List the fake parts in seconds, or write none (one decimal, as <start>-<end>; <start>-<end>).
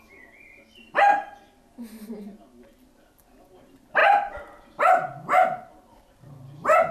none